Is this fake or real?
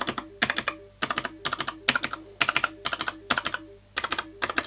real